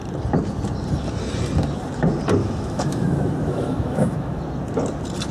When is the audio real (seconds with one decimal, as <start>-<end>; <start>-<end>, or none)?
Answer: 0.0-2.4; 4.4-5.3